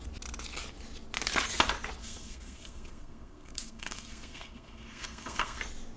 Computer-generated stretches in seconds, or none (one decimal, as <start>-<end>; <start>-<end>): 2.0-5.6